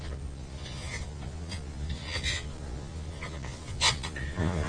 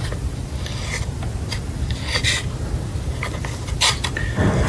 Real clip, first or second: second